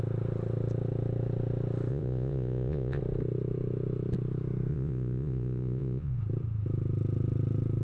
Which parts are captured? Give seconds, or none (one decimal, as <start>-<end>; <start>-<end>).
0.0-1.9; 3.0-4.7; 6.2-7.8